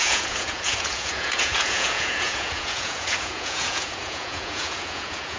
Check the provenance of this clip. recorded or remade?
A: remade